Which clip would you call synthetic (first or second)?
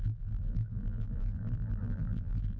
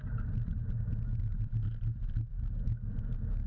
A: first